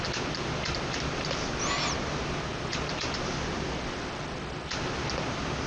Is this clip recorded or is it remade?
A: recorded